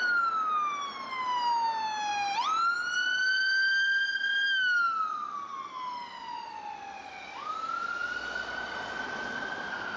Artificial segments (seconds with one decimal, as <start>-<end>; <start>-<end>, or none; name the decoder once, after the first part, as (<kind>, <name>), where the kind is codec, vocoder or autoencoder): none